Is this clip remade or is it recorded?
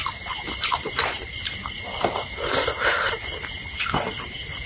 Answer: recorded